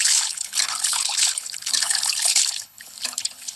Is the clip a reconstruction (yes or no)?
yes